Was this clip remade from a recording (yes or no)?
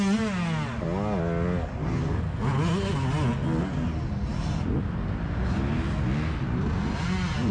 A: no